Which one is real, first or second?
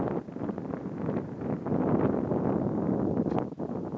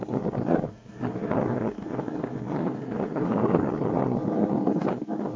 first